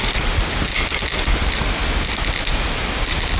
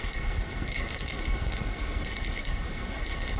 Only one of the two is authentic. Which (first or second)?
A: first